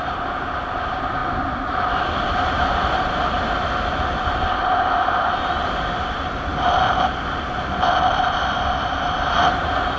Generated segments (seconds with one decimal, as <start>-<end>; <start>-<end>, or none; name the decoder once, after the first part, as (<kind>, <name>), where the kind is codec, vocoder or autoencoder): none